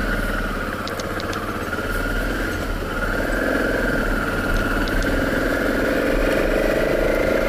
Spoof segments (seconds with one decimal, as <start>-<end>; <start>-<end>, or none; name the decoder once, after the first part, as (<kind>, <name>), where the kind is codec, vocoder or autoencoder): none